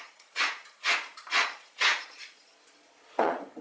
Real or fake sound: fake